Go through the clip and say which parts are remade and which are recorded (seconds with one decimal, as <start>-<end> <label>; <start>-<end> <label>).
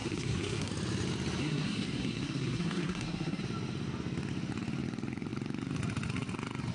0.0-0.7 remade; 0.7-1.4 recorded; 1.4-3.4 remade; 3.4-6.7 recorded